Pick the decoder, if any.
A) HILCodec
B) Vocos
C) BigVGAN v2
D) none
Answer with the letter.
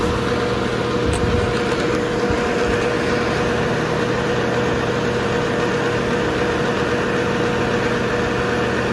D